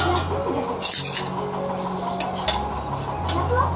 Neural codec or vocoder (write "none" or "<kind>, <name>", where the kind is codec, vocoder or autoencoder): none